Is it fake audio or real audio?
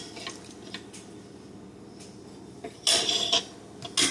real